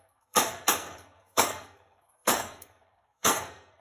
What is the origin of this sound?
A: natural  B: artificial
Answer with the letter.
B